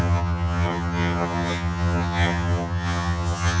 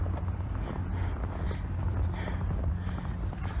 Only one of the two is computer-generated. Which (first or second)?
first